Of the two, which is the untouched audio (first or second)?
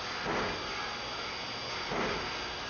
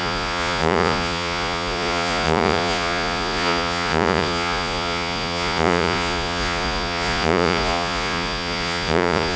first